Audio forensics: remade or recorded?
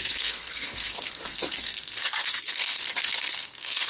remade